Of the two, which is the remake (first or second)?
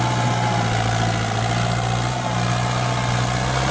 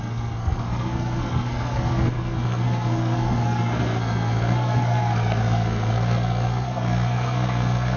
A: second